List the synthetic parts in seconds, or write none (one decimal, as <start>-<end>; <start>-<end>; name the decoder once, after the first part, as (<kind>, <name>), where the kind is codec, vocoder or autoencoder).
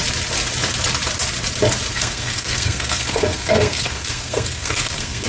1.9-5.3 (codec, SNAC)